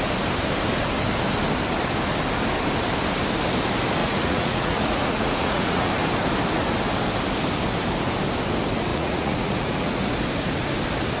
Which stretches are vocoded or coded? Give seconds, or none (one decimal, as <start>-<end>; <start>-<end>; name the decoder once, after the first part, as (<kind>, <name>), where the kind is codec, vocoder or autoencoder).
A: 4.0-5.9 (vocoder, Vocos); 8.9-10.1